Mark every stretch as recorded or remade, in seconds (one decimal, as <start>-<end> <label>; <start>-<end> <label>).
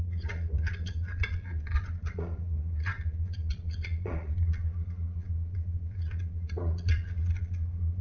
0.0-8.0 remade